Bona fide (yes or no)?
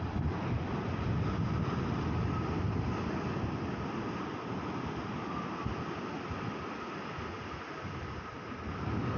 yes